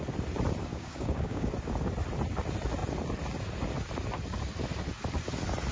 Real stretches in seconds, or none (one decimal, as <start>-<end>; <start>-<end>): 0.0-0.7; 1.5-5.7